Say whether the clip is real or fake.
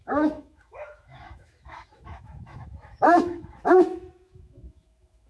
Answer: fake